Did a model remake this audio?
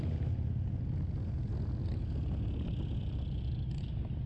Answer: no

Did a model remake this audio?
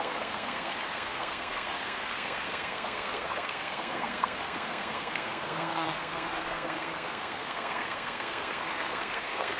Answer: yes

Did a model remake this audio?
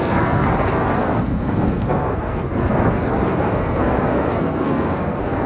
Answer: yes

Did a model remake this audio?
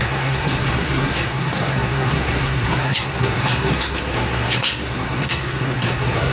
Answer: yes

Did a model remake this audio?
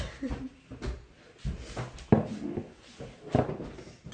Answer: no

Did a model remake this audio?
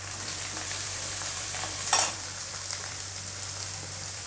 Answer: yes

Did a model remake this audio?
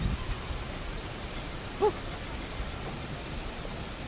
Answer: no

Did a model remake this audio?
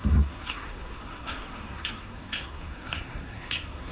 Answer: yes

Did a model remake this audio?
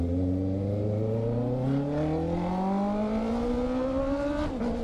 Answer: no